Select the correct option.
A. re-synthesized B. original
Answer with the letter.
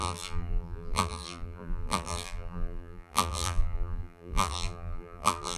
A